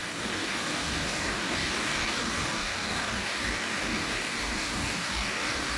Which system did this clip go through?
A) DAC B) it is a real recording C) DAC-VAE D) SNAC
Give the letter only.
A